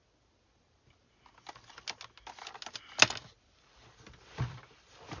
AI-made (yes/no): no